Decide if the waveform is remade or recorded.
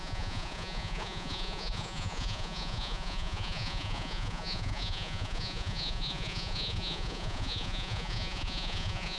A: remade